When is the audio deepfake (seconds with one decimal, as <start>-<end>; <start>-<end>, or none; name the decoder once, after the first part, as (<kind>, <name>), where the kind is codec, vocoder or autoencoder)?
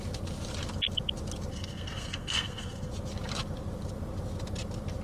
1.5-2.9 (codec, SNAC)